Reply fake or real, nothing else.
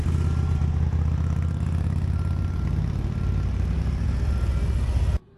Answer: real